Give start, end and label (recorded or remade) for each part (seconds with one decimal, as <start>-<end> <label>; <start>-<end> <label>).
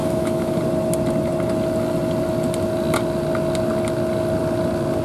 0.0-0.6 remade; 0.6-5.0 recorded